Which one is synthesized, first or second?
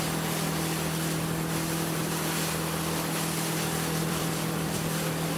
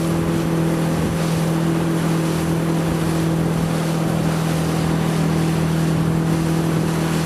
first